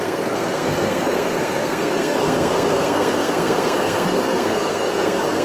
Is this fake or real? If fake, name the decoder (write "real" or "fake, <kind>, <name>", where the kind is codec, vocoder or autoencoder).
fake, codec, SNAC